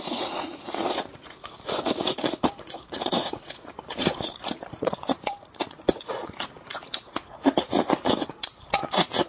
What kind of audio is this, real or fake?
fake